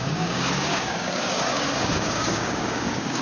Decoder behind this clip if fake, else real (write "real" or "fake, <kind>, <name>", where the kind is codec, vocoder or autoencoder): fake, codec, DAC